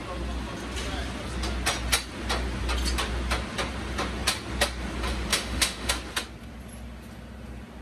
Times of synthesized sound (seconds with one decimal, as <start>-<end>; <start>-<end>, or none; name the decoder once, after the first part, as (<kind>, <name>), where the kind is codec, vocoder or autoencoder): 5.3-5.9 (autoencoder, DAC-VAE)